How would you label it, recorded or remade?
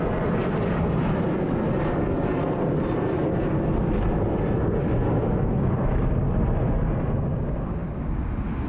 recorded